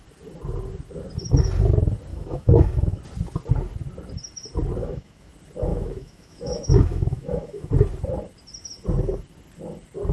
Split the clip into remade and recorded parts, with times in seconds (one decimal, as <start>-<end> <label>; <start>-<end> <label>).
0.0-2.1 recorded; 2.1-3.0 remade; 3.0-4.8 recorded; 4.8-5.3 remade; 5.3-5.7 recorded; 5.7-7.7 remade; 7.7-10.1 recorded